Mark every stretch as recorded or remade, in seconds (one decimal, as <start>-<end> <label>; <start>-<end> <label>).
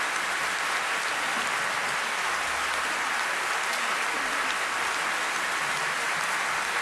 0.0-1.3 recorded; 1.3-2.2 remade; 2.2-6.8 recorded